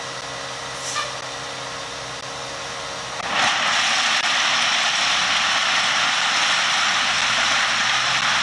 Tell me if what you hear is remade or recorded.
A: recorded